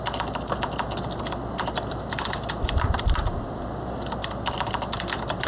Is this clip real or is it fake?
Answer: real